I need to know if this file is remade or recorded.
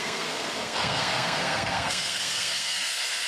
remade